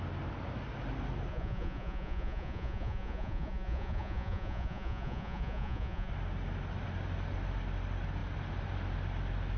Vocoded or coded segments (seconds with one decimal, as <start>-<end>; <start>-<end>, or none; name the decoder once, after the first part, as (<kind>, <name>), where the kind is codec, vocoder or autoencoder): 1.3-6.1 (vocoder, Vocos)